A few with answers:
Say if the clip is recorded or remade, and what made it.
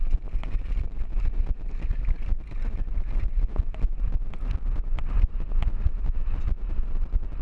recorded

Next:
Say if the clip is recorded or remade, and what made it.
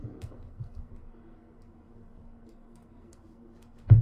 remade, codec, SNAC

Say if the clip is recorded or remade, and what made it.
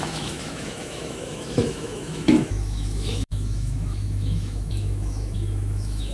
remade, autoencoder, DAC-VAE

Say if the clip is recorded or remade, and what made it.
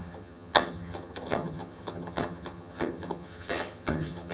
remade, vocoder, HiFi-GAN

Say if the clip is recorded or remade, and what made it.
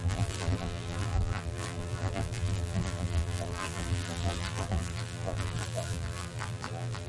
remade, vocoder, BigVGAN v2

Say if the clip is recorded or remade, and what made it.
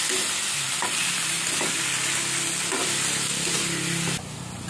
recorded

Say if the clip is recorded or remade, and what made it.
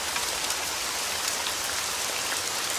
recorded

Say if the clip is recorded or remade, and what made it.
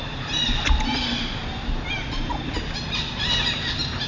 recorded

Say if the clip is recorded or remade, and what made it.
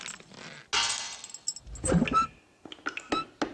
recorded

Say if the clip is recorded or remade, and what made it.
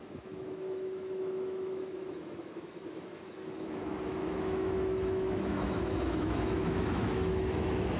remade, autoencoder, DAC-VAE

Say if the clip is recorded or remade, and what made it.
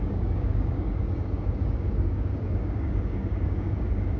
remade, codec, DAC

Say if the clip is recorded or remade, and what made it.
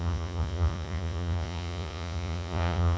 remade, vocoder, Vocos